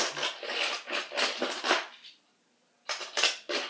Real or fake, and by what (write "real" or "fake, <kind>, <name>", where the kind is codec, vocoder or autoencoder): real